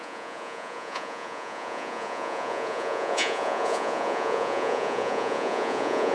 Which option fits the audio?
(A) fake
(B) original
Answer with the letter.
A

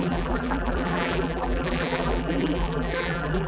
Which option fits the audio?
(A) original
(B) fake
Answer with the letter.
B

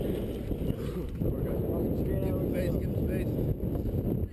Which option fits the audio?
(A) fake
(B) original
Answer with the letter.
B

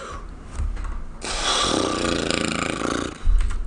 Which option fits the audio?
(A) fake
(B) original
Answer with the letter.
B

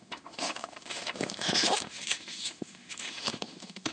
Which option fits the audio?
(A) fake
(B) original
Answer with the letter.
A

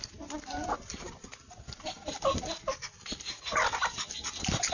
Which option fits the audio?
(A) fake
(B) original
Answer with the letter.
B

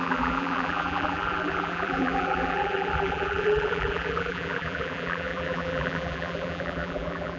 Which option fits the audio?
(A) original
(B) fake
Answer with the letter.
B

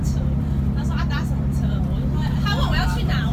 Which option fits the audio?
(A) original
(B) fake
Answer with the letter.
B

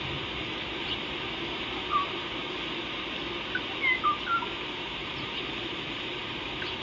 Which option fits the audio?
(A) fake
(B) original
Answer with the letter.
B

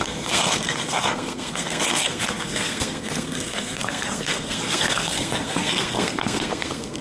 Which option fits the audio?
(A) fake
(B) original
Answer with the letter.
A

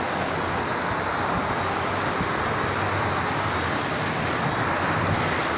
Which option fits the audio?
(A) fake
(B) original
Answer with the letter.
B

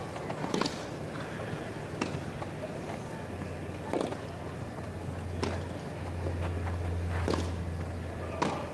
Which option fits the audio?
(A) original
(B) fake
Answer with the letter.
A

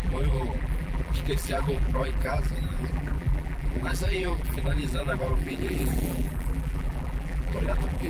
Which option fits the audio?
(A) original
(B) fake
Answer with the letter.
B